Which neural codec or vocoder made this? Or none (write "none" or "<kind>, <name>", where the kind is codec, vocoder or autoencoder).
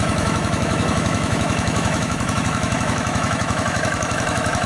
autoencoder, DAC-VAE